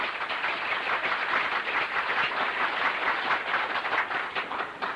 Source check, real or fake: real